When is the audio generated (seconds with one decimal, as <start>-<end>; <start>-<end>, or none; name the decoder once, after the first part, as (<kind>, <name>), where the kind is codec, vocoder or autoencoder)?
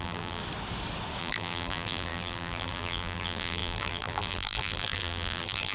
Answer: 0.0-0.4 (vocoder, BigVGAN v2); 1.2-5.7